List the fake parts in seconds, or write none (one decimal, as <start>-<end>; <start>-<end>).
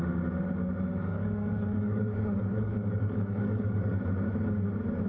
0.9-4.0